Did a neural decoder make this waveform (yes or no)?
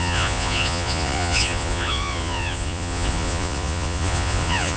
yes